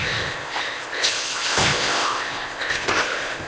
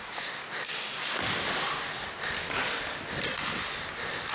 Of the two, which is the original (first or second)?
second